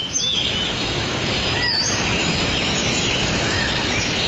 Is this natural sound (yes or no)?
no